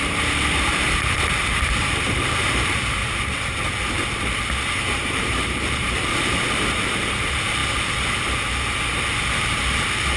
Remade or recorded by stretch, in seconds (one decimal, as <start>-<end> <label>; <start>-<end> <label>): 0.0-3.0 remade; 3.0-4.7 recorded; 4.7-7.6 remade; 7.6-9.4 recorded; 9.4-10.2 remade